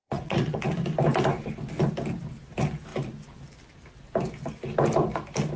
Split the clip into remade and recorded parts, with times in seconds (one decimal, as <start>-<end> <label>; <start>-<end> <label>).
0.0-0.6 remade; 0.6-5.6 recorded